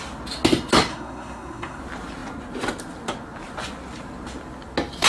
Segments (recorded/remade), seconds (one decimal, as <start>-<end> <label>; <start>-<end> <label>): 0.0-0.9 recorded; 0.9-1.8 remade; 1.8-5.1 recorded